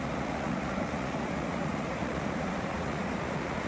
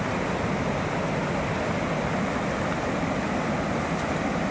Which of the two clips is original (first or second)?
second